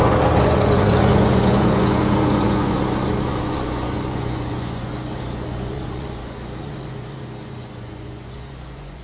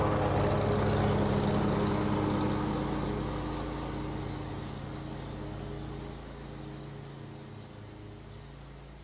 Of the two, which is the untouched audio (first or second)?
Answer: second